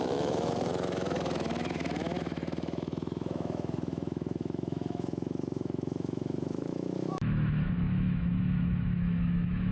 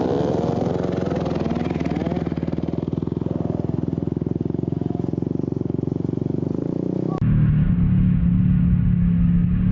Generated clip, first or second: first